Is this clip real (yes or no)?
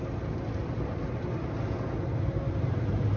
yes